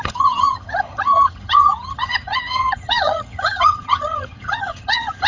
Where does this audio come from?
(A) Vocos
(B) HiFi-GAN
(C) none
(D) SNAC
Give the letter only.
B